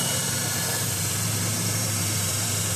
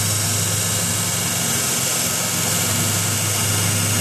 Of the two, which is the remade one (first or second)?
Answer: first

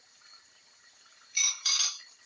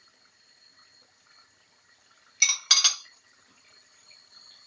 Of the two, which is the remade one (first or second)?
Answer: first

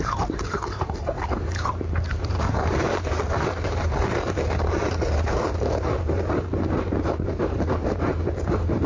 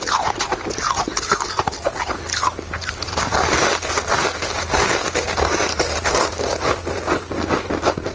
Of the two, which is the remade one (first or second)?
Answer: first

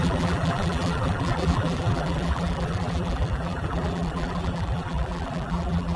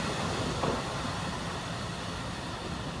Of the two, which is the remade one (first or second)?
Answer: first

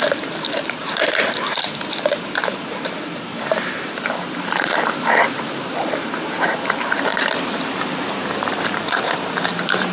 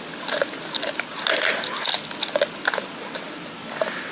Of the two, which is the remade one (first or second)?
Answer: first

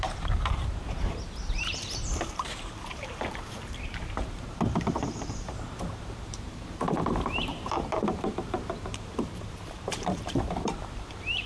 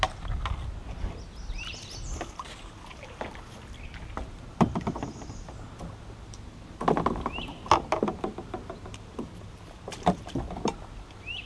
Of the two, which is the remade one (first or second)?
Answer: first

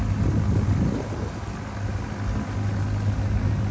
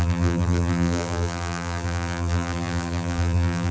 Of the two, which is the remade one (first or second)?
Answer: second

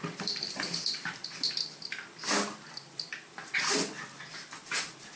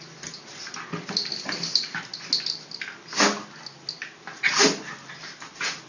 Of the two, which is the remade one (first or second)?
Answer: first